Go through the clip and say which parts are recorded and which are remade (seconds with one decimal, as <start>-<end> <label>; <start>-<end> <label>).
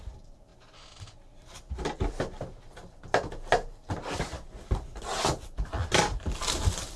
0.0-7.0 recorded